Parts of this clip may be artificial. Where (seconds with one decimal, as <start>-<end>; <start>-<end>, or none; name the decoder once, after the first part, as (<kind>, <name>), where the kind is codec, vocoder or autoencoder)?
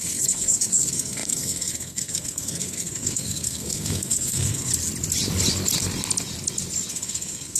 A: 0.0-4.7 (codec, SNAC); 6.9-7.6